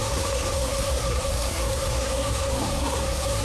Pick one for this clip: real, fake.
fake